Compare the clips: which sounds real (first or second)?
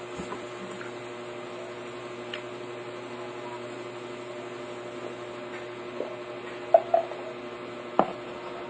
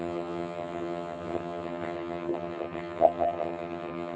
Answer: first